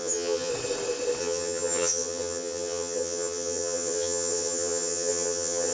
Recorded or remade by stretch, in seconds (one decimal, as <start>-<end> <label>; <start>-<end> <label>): 0.0-0.5 remade; 0.5-1.2 recorded; 1.2-5.7 remade